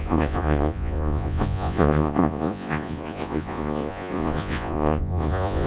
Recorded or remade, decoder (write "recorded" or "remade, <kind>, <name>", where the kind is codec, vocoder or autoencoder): remade, vocoder, Vocos